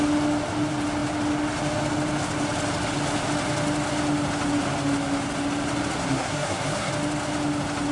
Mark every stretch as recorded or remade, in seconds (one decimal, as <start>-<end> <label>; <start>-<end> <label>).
0.0-6.0 recorded; 6.0-6.9 remade; 6.9-7.9 recorded